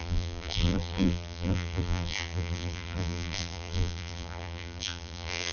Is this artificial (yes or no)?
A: yes